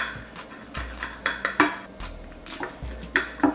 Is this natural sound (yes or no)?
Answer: yes